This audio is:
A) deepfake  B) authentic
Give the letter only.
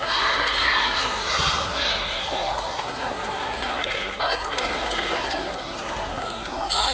A